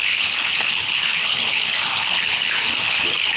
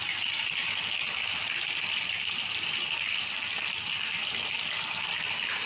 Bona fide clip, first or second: second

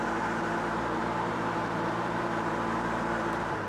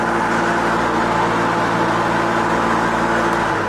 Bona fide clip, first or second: second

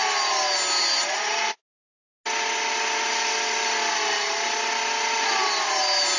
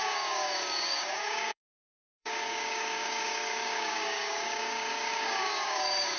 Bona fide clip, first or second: first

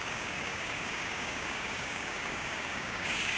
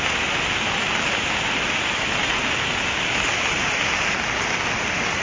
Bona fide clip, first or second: second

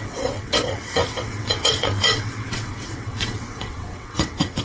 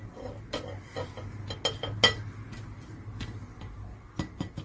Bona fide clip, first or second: second